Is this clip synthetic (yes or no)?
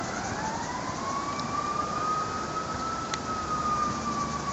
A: no